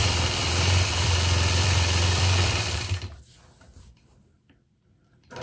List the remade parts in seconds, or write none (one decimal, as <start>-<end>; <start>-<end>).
0.0-3.2